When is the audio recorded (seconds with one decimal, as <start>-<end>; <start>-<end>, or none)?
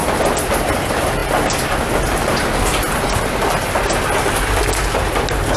0.0-5.6